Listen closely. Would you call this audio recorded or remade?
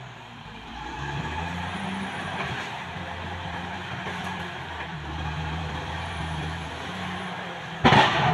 remade